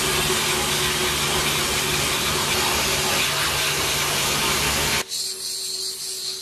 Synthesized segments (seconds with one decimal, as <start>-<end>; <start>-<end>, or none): none